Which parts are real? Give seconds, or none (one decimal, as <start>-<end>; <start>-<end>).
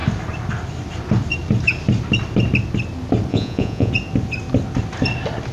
0.0-3.3; 3.9-5.5